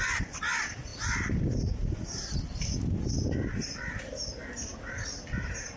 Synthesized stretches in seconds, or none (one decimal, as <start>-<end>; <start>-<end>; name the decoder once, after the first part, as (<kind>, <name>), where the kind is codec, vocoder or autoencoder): none